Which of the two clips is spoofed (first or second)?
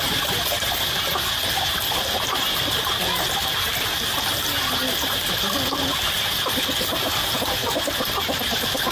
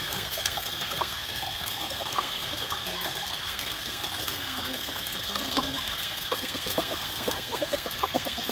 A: second